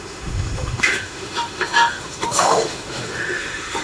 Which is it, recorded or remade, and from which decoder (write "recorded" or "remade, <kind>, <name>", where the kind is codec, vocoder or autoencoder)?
remade, autoencoder, DAC-VAE